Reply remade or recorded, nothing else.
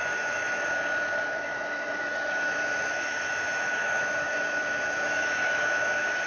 remade